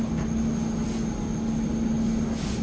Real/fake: real